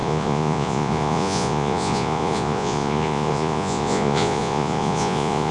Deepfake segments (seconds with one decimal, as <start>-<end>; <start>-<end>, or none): 0.0-5.5